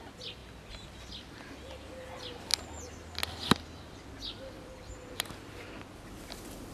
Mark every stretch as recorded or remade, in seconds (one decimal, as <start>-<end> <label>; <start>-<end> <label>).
0.0-6.7 recorded